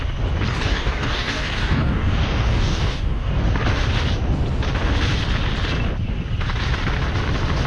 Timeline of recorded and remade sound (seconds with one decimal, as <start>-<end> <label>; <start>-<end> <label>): 0.0-0.5 recorded; 0.5-3.3 remade; 3.3-7.7 recorded